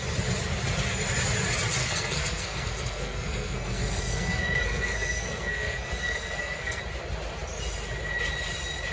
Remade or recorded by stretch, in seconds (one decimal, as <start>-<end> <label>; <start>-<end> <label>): 0.0-1.8 recorded; 1.8-6.8 remade; 6.8-8.9 recorded